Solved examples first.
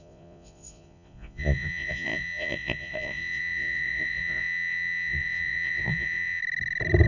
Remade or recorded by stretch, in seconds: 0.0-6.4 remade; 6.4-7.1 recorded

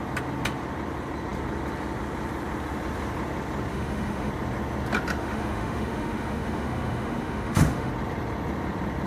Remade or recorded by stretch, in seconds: 0.0-3.7 recorded; 3.7-4.3 remade; 4.3-5.2 recorded; 5.2-7.9 remade; 7.9-9.1 recorded

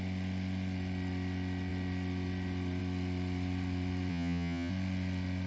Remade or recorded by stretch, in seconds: 0.0-4.1 recorded; 4.1-4.7 remade; 4.7-5.5 recorded

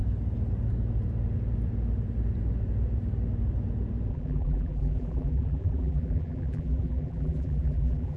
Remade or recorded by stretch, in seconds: 0.0-4.1 recorded; 4.1-8.2 remade

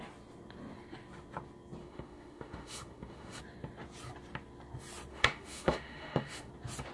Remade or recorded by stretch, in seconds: 0.0-1.8 recorded; 1.8-3.4 remade; 3.4-5.1 recorded; 5.1-6.5 remade; 6.5-6.9 recorded

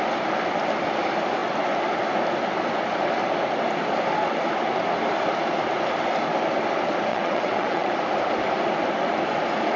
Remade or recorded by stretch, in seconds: 0.0-7.1 recorded; 7.1-7.9 remade; 7.9-9.8 recorded

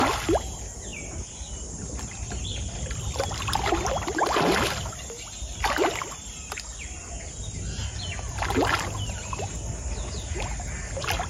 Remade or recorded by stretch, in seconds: 0.0-11.3 recorded